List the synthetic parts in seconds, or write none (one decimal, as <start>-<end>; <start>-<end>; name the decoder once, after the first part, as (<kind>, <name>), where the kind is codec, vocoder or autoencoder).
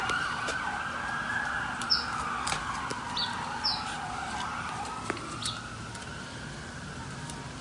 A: none